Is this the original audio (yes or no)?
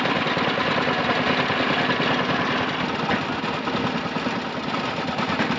yes